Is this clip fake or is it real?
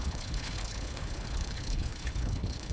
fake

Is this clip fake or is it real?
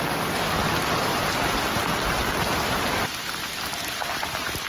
real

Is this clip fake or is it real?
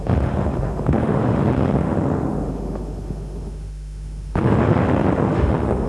fake